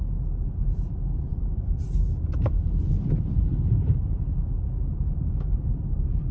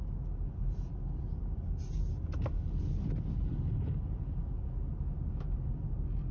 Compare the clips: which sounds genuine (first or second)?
second